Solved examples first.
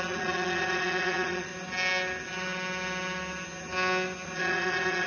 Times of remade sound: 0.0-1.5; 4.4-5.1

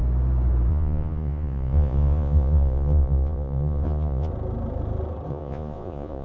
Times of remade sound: 0.7-4.3; 5.3-6.2